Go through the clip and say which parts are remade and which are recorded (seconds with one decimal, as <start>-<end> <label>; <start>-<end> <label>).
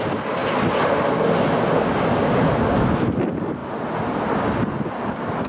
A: 0.0-5.5 recorded